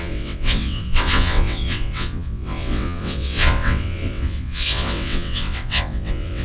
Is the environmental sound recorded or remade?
remade